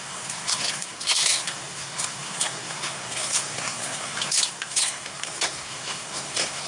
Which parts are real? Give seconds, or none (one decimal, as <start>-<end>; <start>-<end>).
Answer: none